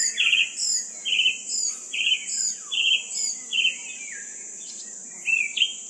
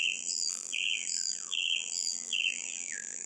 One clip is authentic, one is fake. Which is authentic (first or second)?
first